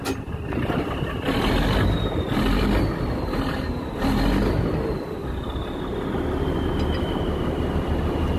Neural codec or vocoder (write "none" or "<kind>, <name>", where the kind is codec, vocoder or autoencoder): none